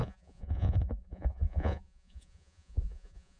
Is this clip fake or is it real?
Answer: fake